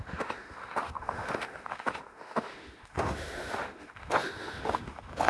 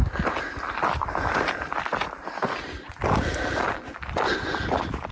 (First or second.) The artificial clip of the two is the first